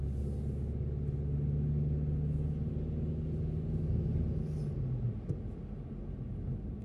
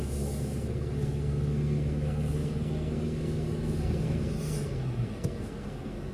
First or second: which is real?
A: first